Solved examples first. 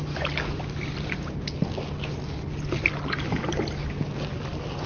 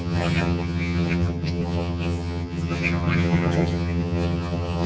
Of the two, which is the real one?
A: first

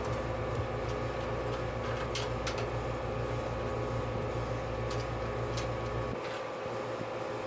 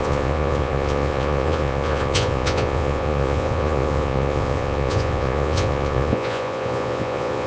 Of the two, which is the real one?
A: first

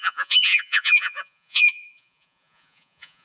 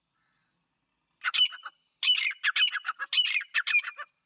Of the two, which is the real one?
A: second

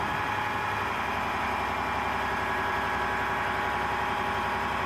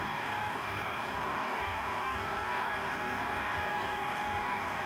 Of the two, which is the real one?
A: first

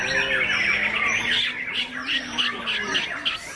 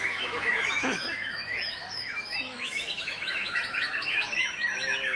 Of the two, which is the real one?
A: first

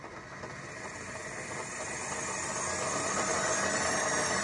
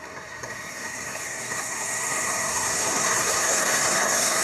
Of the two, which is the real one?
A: first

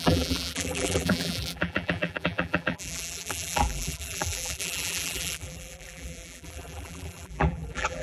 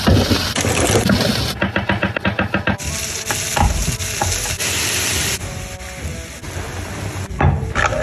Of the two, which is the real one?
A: second